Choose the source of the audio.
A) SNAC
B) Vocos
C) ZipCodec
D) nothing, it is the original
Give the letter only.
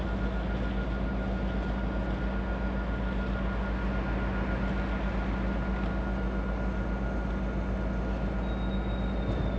D